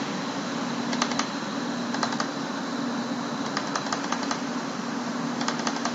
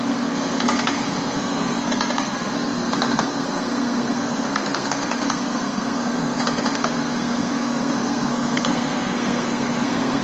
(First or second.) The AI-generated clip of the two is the second